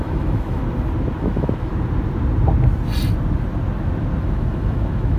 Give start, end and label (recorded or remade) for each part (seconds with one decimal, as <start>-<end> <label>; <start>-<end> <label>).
0.0-0.6 remade; 0.6-1.2 recorded; 1.2-1.7 remade; 1.7-4.2 recorded; 4.2-5.2 remade